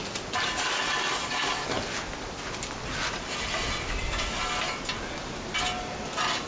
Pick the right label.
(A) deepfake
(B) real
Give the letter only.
B